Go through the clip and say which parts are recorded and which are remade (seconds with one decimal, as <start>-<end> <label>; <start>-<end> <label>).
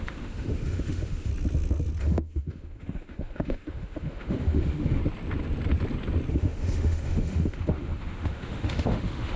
0.0-1.3 remade; 1.3-2.0 recorded; 2.0-5.0 remade; 5.0-6.3 recorded; 6.3-9.4 remade